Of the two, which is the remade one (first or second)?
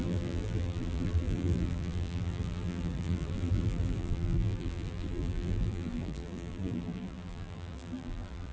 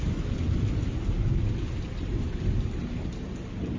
first